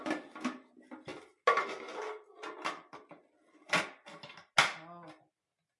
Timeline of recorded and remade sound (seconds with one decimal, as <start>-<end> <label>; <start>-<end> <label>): 0.0-5.8 recorded